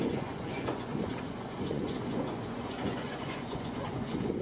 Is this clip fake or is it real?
fake